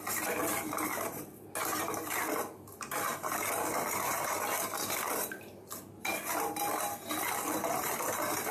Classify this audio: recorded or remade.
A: recorded